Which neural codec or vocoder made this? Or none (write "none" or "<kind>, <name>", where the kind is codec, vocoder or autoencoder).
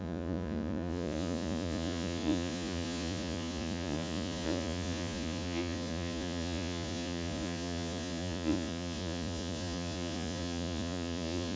vocoder, Vocos